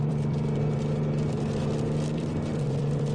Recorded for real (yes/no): no